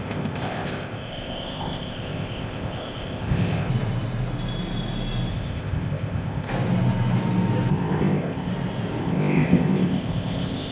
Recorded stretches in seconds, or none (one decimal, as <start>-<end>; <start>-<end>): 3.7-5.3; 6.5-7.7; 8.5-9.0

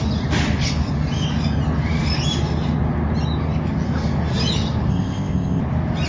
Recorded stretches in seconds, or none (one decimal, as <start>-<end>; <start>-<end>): 0.0-4.9; 5.6-6.1

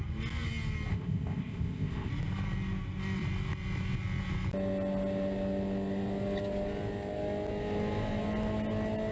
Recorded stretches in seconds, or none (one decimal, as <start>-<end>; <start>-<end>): 0.0-0.9; 2.1-9.1

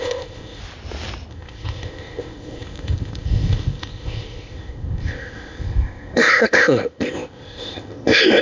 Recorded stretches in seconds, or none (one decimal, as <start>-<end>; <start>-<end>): 0.6-1.3